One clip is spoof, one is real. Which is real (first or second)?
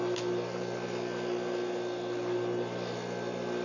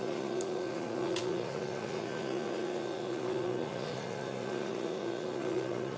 first